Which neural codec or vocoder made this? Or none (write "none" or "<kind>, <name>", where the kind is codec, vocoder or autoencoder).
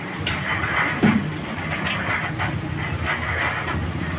none